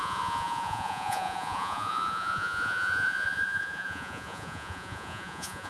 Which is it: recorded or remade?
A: remade